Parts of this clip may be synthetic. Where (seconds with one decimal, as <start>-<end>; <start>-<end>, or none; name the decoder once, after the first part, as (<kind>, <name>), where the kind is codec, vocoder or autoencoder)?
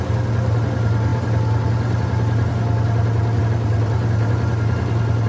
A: none